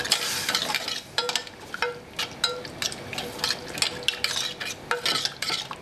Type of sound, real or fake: real